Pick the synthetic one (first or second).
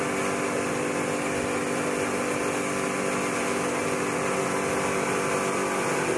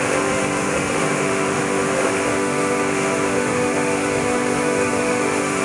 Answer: second